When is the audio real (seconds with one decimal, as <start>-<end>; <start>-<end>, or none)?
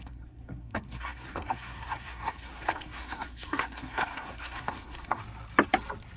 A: 5.2-6.2